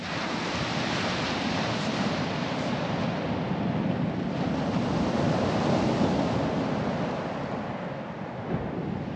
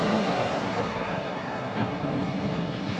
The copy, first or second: second